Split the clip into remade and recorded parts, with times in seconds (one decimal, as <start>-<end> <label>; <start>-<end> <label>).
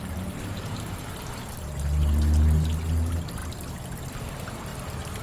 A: 0.0-5.2 recorded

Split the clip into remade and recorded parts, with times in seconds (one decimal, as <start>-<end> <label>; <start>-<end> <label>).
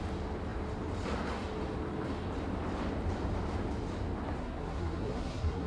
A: 0.0-4.4 recorded; 4.4-5.7 remade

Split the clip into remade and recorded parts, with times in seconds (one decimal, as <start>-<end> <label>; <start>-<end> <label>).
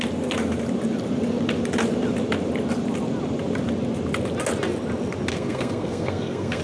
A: 0.0-5.3 recorded; 5.3-6.6 remade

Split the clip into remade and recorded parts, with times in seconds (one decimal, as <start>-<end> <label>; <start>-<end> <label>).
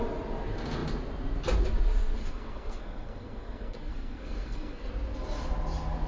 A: 0.0-2.2 recorded; 2.2-4.9 remade; 4.9-6.1 recorded